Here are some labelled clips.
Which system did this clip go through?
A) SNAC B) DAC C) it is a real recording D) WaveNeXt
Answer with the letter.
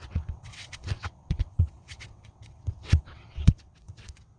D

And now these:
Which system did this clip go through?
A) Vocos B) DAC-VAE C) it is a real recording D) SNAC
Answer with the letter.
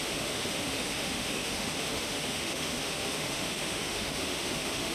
B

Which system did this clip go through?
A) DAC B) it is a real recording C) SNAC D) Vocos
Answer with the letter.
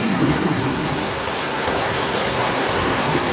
C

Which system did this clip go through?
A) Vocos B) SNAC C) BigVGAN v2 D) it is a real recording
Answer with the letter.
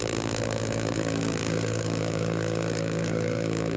B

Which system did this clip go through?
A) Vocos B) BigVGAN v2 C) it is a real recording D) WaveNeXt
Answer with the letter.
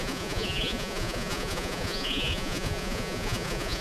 A